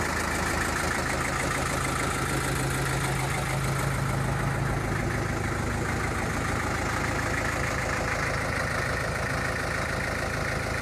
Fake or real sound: real